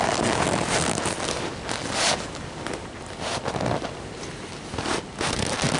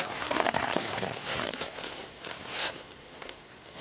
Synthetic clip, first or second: second